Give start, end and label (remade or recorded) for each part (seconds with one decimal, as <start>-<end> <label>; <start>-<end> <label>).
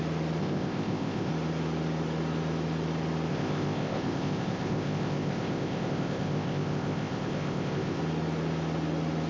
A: 0.0-0.4 recorded; 0.4-1.3 remade; 1.3-3.3 recorded; 3.3-8.0 remade; 8.0-9.3 recorded